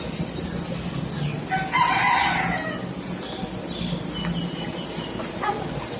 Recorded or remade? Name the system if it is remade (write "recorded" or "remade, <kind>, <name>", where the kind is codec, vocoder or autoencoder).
recorded